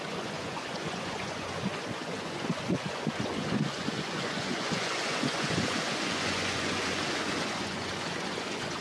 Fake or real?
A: fake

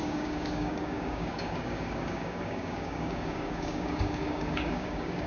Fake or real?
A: fake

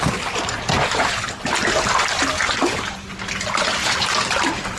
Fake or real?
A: real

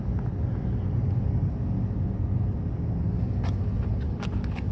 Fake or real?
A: real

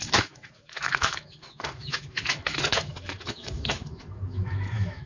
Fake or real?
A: fake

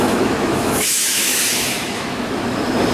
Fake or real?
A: fake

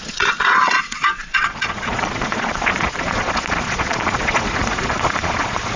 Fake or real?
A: fake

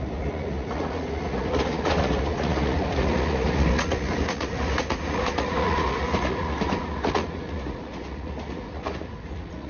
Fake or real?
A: fake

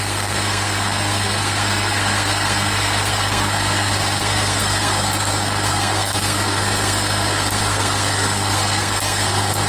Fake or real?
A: fake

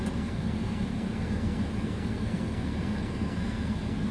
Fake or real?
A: fake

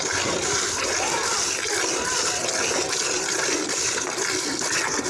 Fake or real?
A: real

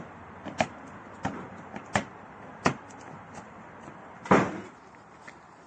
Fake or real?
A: real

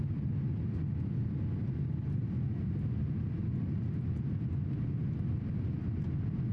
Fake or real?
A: real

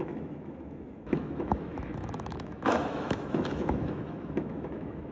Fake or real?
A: fake